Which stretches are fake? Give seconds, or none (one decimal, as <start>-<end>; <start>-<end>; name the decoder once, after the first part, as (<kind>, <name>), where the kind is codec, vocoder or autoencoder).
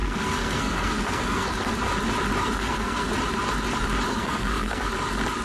0.0-1.7 (codec, SNAC); 2.4-3.1; 4.1-4.9